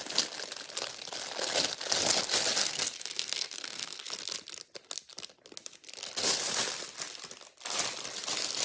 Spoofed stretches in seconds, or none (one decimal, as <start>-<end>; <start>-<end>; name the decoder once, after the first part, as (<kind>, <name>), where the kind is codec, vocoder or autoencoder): 2.6-4.0 (codec, SNAC)